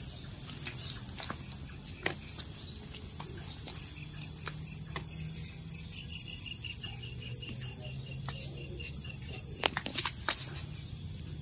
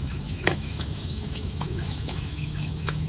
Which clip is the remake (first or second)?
second